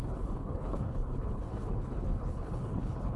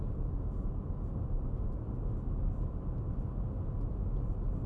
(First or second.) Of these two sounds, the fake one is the first